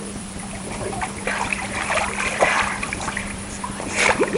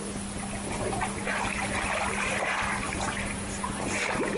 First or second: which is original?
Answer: second